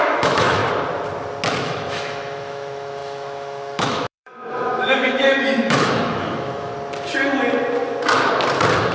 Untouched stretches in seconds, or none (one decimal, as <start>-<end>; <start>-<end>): 0.6-1.6; 6.7-8.9